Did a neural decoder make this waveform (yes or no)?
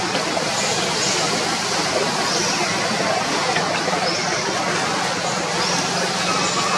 no